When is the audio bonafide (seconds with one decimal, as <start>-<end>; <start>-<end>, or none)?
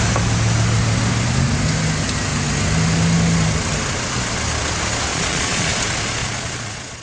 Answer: 0.0-5.1; 5.7-6.2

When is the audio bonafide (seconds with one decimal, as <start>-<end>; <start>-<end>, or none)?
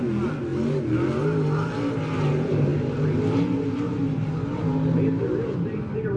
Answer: 0.0-6.2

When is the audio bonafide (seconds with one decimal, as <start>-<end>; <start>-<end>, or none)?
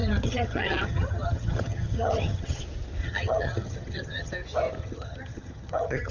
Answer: 2.6-3.0; 4.3-4.8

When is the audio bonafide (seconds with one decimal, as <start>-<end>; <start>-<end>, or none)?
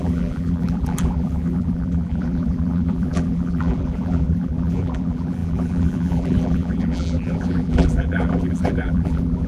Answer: none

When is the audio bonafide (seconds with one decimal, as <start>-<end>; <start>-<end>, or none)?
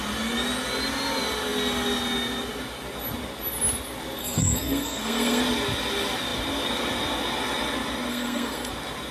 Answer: 0.0-4.2; 5.4-8.1; 8.7-9.1